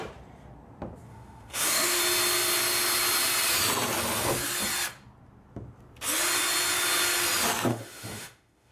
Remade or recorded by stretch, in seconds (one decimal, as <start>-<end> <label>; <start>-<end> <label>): 0.0-1.1 recorded; 1.1-2.0 remade; 2.0-7.7 recorded; 7.7-8.7 remade